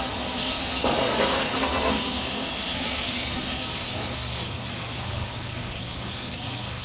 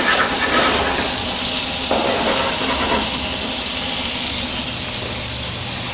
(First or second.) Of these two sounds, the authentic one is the second